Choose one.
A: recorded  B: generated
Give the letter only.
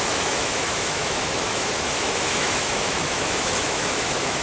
B